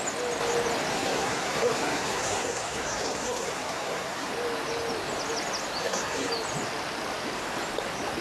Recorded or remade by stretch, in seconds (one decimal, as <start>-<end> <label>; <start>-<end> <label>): 0.0-0.9 recorded; 0.9-4.3 remade; 4.3-5.8 recorded; 5.8-6.3 remade; 6.3-8.2 recorded

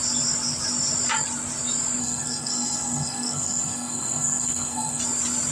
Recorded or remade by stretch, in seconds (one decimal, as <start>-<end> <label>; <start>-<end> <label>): 0.0-2.0 recorded; 2.0-5.0 remade; 5.0-5.5 recorded

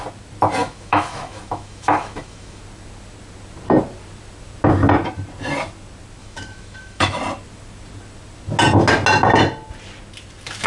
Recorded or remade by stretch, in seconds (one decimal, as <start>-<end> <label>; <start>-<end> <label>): 0.0-0.6 recorded; 0.6-2.6 remade; 2.6-6.2 recorded; 6.2-7.2 remade; 7.2-10.7 recorded

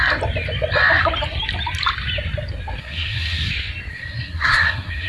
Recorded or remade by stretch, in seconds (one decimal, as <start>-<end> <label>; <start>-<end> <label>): 0.0-2.8 recorded; 2.8-3.5 remade; 3.5-3.9 recorded; 3.9-5.1 remade

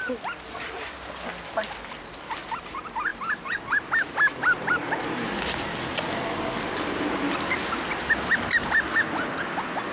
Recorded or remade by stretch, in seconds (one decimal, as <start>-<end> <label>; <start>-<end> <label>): 0.0-3.1 recorded; 3.1-3.6 remade; 3.6-9.9 recorded

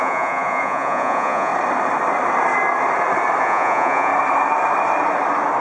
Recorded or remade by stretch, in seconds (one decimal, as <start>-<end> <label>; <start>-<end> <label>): 0.0-1.5 remade; 1.5-3.4 recorded; 3.4-4.1 remade; 4.1-5.6 recorded

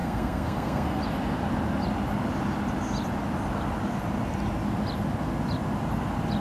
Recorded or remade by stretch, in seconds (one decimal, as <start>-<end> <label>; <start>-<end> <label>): 0.0-1.0 remade; 1.0-6.4 recorded